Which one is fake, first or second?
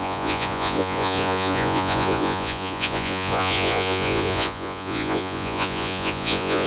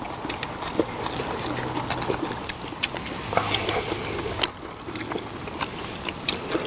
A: first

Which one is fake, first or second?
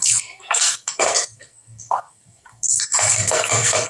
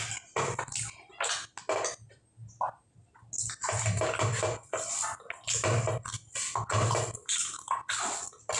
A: first